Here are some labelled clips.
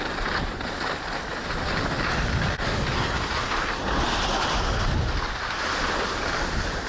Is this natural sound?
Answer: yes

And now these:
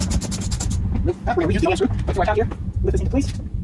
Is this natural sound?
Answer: yes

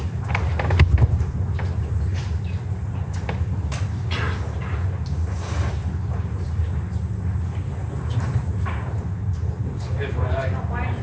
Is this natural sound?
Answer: yes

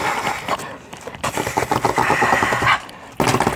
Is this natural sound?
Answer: yes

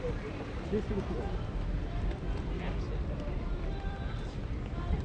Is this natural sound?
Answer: no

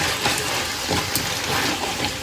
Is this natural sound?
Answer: no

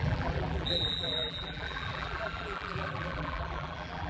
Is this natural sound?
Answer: no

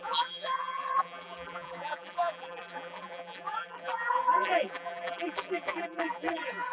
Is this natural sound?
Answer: no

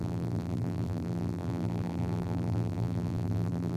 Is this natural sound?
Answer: no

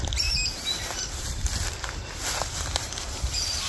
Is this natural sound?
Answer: no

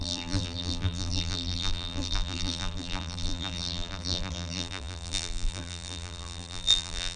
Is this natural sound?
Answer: no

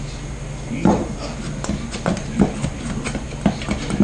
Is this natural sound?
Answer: yes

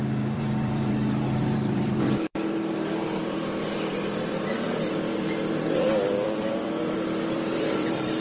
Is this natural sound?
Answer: no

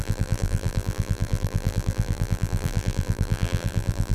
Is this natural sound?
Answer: no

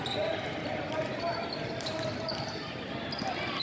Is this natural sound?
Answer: yes